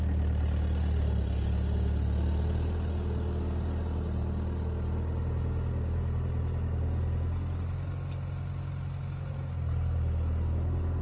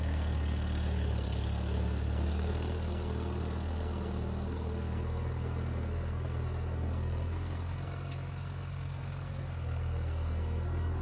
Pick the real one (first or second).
first